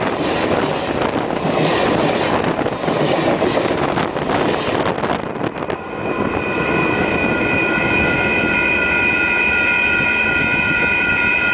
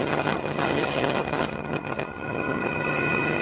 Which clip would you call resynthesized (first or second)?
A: second